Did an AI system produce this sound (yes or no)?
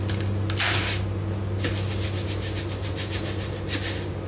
no